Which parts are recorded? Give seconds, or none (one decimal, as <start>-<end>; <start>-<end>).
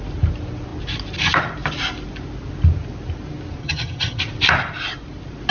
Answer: 0.0-3.6; 4.2-5.5